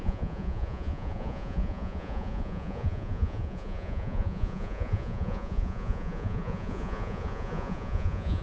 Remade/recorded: remade